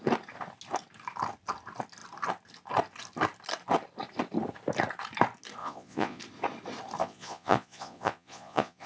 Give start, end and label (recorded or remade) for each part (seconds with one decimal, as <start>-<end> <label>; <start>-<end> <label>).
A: 0.0-5.6 recorded; 5.6-6.2 remade; 6.2-7.0 recorded; 7.0-8.9 remade